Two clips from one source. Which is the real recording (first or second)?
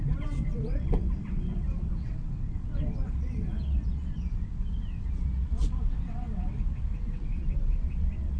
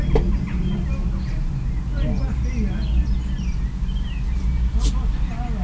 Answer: second